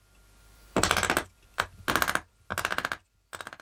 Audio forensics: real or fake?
real